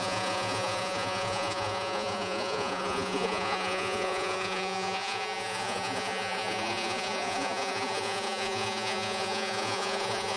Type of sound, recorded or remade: remade